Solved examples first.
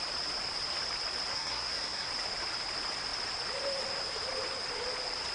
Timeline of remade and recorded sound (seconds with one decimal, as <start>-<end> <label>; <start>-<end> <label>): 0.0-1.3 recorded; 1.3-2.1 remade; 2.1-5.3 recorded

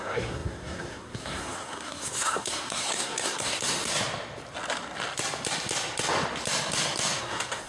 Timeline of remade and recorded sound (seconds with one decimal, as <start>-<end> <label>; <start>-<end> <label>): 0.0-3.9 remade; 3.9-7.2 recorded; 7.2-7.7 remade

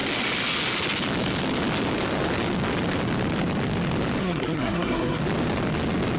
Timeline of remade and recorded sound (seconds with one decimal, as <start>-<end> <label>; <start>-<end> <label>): 0.0-4.2 recorded; 4.2-5.2 remade; 5.2-6.2 recorded

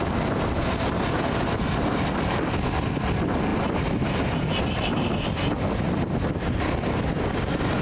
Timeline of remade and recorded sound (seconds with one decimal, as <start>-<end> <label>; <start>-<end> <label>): 0.0-7.8 recorded

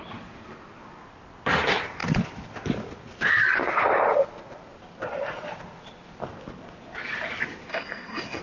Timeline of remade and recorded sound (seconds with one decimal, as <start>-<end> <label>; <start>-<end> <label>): 0.0-7.7 recorded; 7.7-8.4 remade

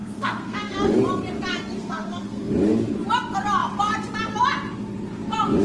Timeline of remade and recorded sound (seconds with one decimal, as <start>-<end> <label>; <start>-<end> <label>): 0.0-0.9 remade; 0.9-1.5 recorded; 1.5-2.5 remade; 2.5-5.6 recorded

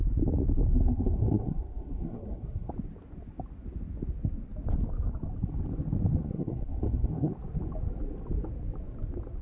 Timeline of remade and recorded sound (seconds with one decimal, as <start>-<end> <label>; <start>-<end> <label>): 0.0-0.7 recorded; 0.7-2.7 remade; 2.7-6.2 recorded; 6.2-7.3 remade; 7.3-9.4 recorded